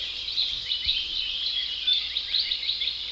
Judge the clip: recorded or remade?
recorded